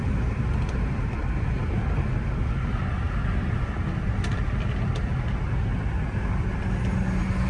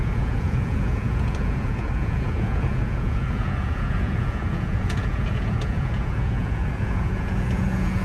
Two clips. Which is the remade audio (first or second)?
second